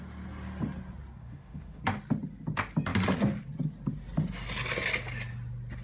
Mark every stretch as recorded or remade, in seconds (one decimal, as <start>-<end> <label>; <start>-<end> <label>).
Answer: 0.0-1.2 recorded; 1.2-1.8 remade; 1.8-5.8 recorded